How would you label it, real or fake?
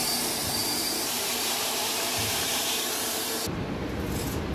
fake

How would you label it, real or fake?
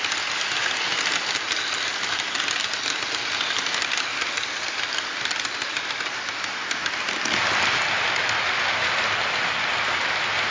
real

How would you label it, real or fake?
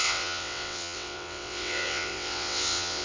fake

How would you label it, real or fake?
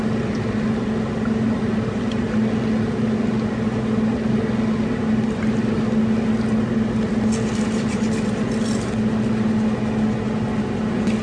real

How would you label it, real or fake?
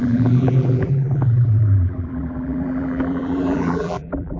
fake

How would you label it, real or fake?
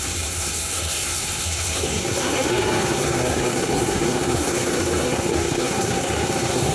fake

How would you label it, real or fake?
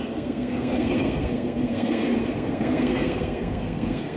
fake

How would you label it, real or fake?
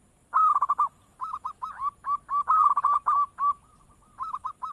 real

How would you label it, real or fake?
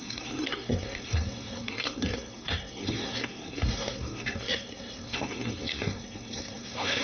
fake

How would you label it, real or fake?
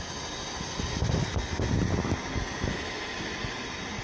real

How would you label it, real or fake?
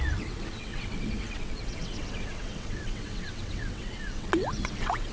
fake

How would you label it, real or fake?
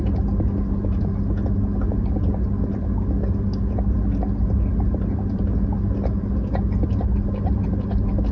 real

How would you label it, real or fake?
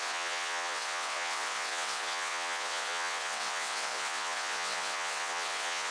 fake